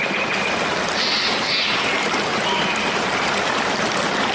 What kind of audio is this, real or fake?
real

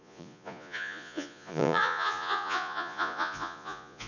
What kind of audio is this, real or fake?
fake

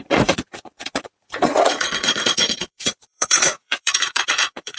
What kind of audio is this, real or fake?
fake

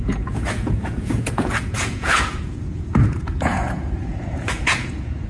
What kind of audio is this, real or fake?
fake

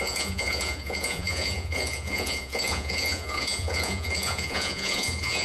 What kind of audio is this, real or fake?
fake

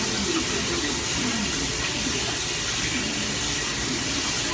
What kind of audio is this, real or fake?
real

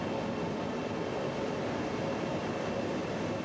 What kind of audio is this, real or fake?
real